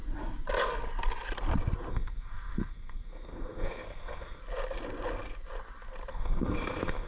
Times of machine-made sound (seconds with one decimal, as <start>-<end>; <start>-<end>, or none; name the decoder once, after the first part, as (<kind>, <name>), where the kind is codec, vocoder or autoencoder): 1.9-4.4 (codec, SNAC); 6.1-7.1